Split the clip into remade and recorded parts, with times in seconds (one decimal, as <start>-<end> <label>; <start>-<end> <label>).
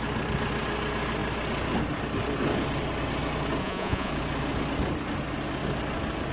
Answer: 0.0-3.6 recorded; 3.6-4.1 remade; 4.1-6.3 recorded